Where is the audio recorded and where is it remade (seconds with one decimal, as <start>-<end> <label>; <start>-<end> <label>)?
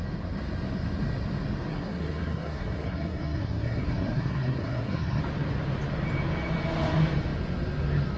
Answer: 0.0-1.7 recorded; 1.7-5.2 remade; 5.2-8.2 recorded